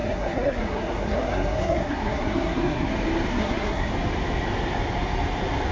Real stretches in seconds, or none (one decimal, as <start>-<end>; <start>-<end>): 2.9-3.3; 3.9-5.7